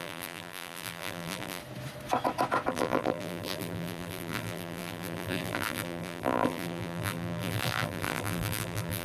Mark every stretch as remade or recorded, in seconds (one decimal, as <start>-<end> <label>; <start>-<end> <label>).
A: 0.0-1.6 remade; 1.6-2.7 recorded; 2.7-9.0 remade